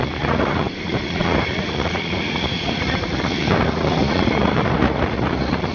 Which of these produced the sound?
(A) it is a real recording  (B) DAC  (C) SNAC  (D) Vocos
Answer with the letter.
D